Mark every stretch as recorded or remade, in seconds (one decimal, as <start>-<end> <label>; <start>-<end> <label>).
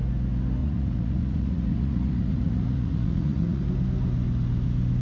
0.0-0.6 recorded; 0.6-3.6 remade; 3.6-5.0 recorded